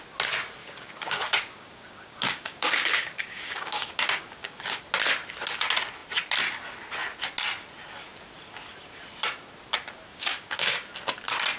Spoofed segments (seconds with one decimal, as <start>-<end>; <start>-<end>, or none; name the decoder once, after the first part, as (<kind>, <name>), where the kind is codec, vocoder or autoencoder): 0.6-4.8 (codec, DAC); 10.1-10.9